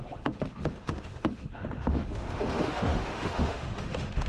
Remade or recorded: remade